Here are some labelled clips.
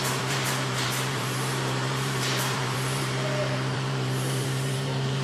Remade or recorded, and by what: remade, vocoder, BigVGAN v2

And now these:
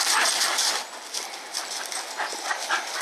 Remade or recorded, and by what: recorded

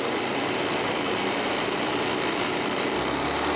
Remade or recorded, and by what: recorded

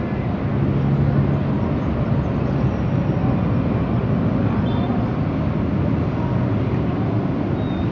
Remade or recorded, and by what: recorded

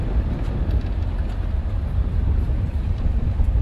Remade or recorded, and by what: remade, vocoder, BigVGAN v2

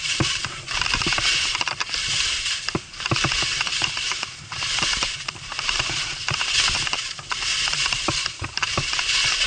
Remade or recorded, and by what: remade, vocoder, BigVGAN v2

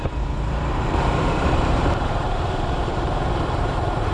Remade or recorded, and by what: remade, vocoder, BigVGAN v2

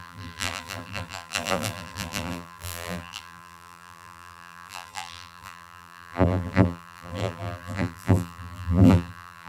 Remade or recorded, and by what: remade, vocoder, BigVGAN v2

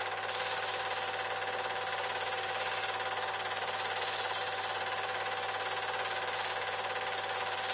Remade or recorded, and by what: remade, vocoder, BigVGAN v2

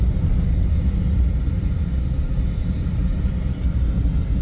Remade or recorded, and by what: recorded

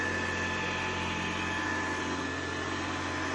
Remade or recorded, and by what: recorded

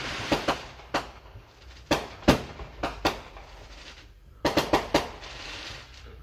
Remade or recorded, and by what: remade, vocoder, BigVGAN v2